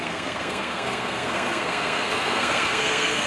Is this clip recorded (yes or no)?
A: no